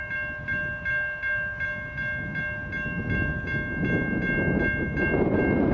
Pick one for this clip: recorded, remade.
recorded